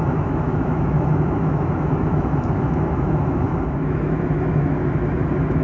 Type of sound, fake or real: fake